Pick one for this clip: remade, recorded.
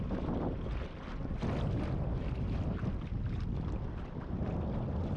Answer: recorded